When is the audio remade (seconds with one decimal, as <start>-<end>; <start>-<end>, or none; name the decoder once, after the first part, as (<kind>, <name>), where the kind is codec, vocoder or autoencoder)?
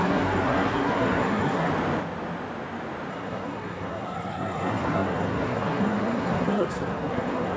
0.0-1.7 (codec, SNAC); 3.1-7.6